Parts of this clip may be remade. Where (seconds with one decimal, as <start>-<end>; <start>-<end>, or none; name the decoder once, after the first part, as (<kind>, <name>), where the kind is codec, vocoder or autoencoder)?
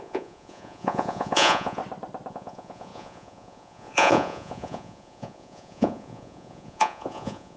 0.0-1.8 (vocoder, Vocos); 2.3-7.6